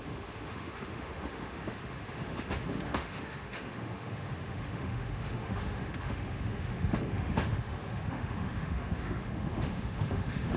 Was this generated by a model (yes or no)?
yes